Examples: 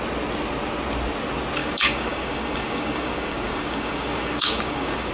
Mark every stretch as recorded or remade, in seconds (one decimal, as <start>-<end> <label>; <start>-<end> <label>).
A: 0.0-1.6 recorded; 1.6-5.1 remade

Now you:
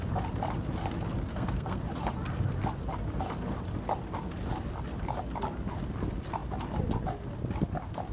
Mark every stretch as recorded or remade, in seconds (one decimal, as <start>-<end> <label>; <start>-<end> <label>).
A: 0.0-1.3 recorded; 1.3-1.8 remade; 1.8-8.1 recorded

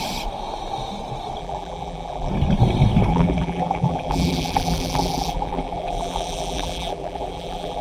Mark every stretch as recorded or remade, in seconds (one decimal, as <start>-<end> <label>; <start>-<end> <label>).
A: 0.0-1.4 recorded; 1.4-2.3 remade; 2.3-3.1 recorded; 3.1-7.8 remade

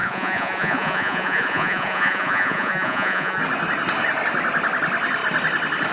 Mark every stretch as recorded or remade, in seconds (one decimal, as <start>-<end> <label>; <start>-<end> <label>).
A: 0.0-3.4 remade; 3.4-5.9 recorded

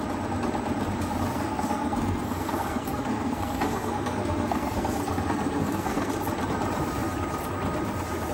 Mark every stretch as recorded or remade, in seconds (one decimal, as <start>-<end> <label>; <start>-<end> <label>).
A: 0.0-1.3 recorded; 1.3-6.1 remade; 6.1-8.3 recorded

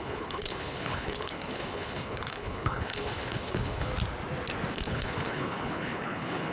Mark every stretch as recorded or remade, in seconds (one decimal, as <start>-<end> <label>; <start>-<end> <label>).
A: 0.0-3.9 remade; 3.9-4.7 recorded; 4.7-6.5 remade

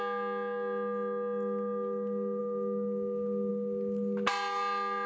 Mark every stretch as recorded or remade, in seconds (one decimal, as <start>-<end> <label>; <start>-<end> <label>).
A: 0.0-5.1 recorded

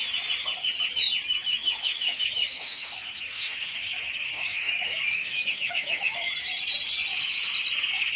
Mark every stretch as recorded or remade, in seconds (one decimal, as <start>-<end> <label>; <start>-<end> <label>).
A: 0.0-1.3 recorded; 1.3-6.1 remade; 6.1-8.2 recorded